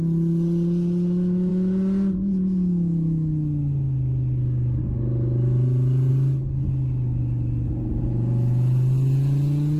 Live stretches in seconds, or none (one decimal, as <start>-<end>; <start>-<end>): 0.0-9.8